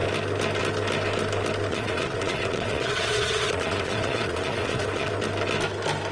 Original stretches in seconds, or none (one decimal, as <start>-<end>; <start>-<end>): 0.0-1.7; 5.1-6.1

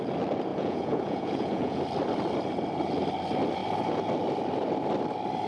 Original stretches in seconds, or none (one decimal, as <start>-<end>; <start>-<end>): 0.0-0.5; 1.8-5.5

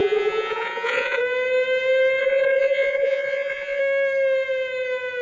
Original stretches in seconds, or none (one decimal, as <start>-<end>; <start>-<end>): 1.2-2.2; 3.8-5.2

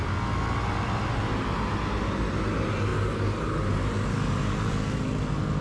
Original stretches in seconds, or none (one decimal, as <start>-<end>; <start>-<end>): 0.0-5.6